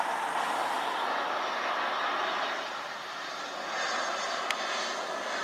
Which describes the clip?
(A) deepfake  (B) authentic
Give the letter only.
B